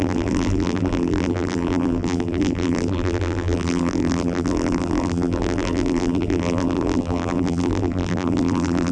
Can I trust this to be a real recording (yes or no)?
no